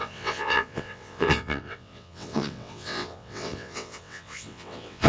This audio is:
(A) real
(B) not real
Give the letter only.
B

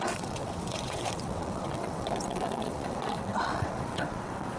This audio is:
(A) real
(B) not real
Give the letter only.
B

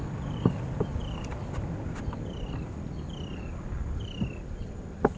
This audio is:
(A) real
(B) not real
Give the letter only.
A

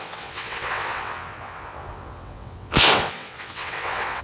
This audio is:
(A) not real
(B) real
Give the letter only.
A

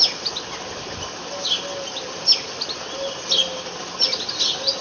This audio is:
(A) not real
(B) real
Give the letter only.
B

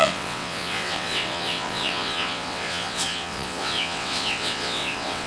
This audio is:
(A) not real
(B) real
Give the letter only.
A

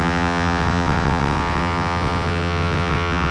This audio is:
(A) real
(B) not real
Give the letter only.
B